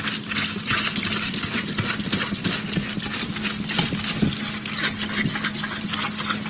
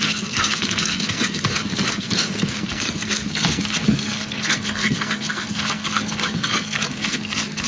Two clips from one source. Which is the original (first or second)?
first